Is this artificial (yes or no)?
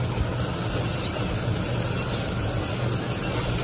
no